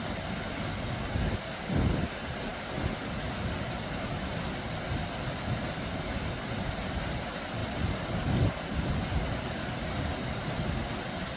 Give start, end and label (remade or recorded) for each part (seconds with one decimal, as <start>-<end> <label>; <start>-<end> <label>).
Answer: 0.0-11.4 recorded